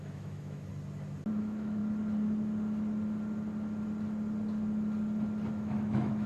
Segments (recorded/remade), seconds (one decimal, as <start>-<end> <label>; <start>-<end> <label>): 0.0-0.7 remade; 0.7-1.3 recorded; 1.3-1.8 remade; 1.8-5.5 recorded; 5.5-6.3 remade